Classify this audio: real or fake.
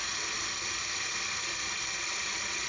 real